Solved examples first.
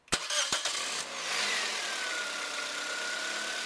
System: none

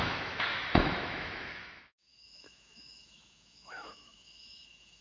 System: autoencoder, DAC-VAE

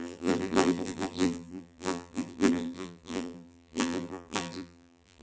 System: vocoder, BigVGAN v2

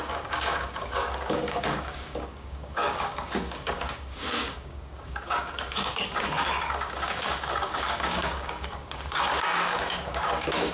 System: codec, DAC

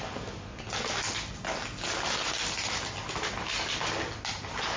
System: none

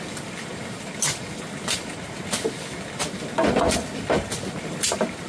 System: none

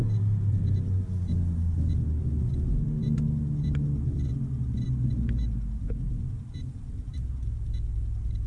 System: none